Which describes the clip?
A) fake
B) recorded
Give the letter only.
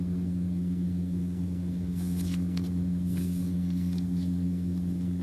A